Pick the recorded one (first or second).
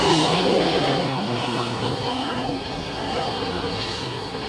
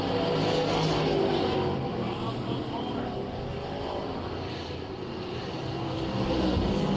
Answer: second